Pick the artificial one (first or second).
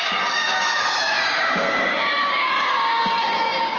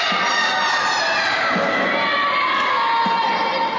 first